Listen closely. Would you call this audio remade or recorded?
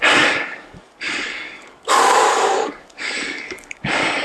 remade